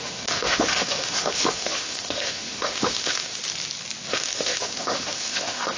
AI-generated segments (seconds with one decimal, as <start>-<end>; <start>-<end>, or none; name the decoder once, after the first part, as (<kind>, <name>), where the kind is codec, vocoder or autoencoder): 0.0-3.4 (autoencoder, DAC-VAE); 4.1-5.8